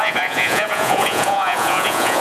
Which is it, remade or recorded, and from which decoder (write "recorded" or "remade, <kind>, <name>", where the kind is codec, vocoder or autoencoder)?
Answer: remade, vocoder, Vocos